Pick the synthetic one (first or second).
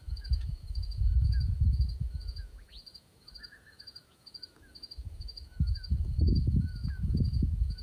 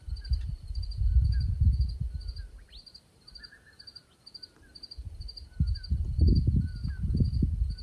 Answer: first